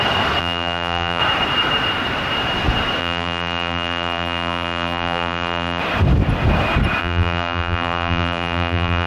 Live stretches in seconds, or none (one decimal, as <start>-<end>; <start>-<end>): 0.0-0.4; 1.2-3.0; 5.8-7.0